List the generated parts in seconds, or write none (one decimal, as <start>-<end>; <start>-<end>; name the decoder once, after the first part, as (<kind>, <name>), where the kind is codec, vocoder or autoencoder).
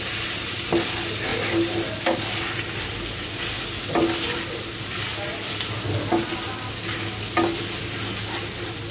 none